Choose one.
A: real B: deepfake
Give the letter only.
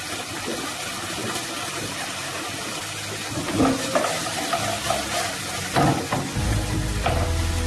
A